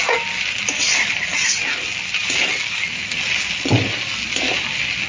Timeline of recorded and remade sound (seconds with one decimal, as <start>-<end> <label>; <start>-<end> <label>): 0.0-5.1 recorded